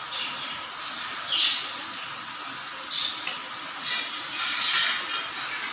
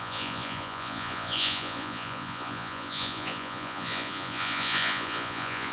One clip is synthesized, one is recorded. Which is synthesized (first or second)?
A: second